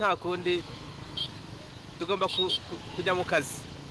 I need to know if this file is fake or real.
fake